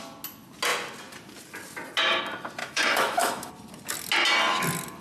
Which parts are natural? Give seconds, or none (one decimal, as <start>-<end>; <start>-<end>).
0.0-2.6; 3.5-5.0